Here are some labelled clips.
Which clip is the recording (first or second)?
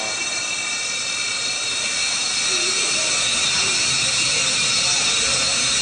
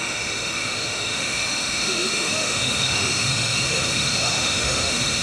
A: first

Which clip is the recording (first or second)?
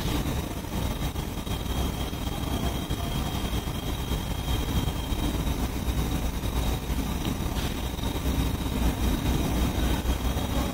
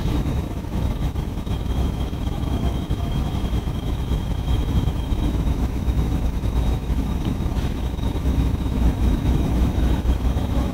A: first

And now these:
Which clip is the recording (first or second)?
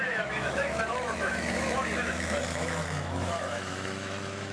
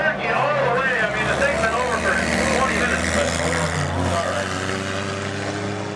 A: second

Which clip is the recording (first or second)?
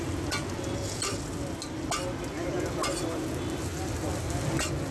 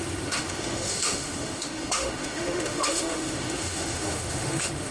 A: first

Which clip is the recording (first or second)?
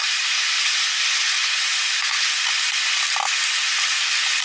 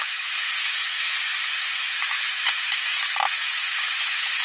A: first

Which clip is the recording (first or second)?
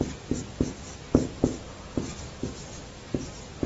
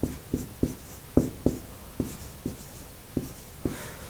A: first